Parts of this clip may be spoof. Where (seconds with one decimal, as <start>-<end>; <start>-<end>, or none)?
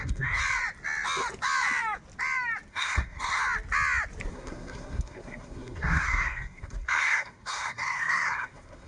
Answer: 0.0-0.4; 2.7-3.4; 4.3-8.9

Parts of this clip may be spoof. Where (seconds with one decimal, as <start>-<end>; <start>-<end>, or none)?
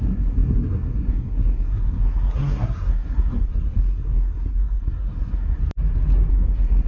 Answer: 0.0-5.6; 6.3-6.9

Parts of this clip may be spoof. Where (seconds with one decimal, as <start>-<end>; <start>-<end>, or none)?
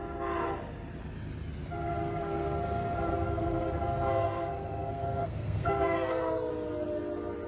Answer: 2.0-6.5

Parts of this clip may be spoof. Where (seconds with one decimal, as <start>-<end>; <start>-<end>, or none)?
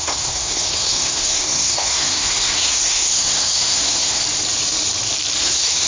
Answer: 0.0-4.2; 5.4-5.9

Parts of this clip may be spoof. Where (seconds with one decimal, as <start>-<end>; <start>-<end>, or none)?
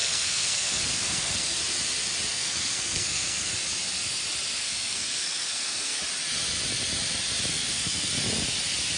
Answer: 0.0-1.6; 2.3-3.5; 4.6-6.0; 7.5-8.1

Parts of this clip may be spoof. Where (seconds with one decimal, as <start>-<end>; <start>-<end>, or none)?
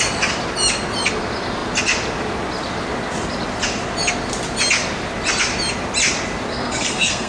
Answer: 6.5-7.3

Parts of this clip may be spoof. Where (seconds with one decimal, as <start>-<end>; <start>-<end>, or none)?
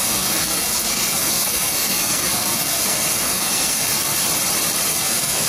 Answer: 0.0-4.1; 4.9-5.5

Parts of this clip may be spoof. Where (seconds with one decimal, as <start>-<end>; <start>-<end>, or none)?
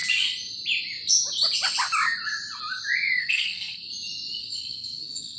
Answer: 3.2-3.9; 4.4-5.4